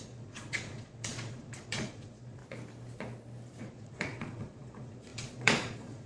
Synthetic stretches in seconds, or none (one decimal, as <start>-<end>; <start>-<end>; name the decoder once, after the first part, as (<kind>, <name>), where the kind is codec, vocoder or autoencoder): 0.0-2.4 (vocoder, Vocos); 3.6-6.1